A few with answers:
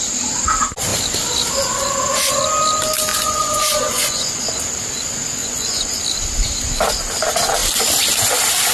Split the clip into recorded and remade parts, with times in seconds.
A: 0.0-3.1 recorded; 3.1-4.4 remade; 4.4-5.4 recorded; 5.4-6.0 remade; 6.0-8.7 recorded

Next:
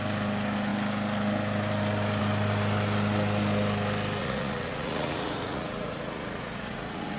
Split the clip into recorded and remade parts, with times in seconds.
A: 0.0-4.2 recorded; 4.2-7.2 remade

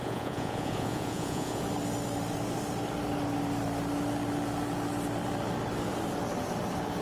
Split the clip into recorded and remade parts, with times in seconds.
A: 0.0-1.6 remade; 1.6-7.0 recorded